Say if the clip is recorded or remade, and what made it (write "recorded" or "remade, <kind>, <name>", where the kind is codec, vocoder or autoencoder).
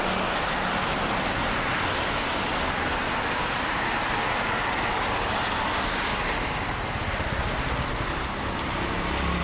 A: recorded